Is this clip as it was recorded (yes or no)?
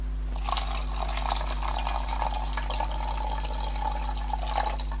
yes